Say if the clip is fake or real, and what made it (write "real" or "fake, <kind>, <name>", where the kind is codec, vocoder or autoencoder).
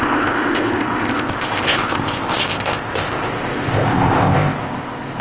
fake, codec, ZipCodec